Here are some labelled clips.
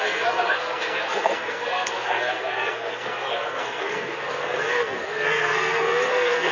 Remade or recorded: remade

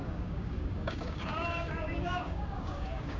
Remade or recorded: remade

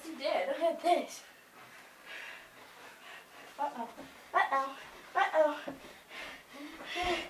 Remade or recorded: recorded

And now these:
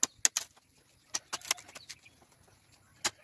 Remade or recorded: recorded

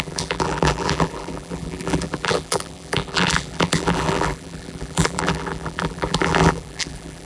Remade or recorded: remade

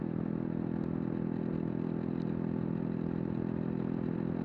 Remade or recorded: recorded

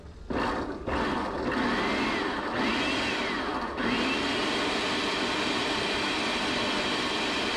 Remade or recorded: recorded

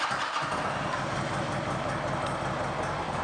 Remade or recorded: recorded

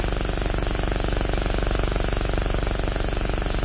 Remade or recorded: recorded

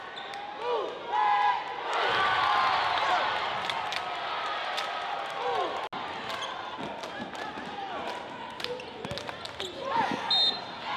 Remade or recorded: recorded